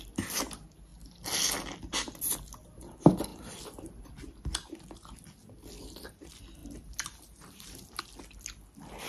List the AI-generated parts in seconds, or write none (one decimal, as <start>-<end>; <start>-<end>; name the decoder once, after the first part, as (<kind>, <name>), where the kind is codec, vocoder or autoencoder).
6.6-8.0 (vocoder, BigVGAN v2)